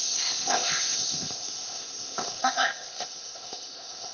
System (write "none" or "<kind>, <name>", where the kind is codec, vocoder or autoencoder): codec, ZipCodec